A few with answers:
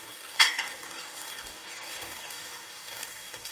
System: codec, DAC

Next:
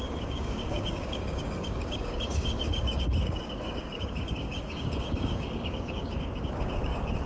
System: codec, DAC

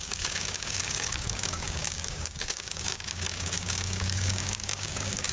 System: codec, DAC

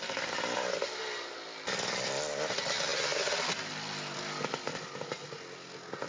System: none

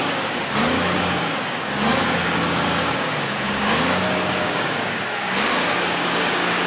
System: codec, DAC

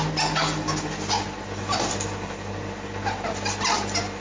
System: none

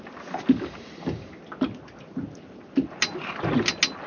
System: none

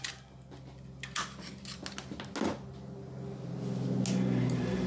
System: none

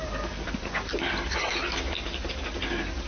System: none